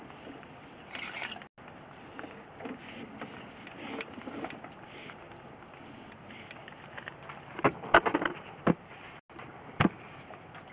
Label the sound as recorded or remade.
recorded